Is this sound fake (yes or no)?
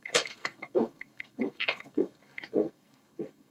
yes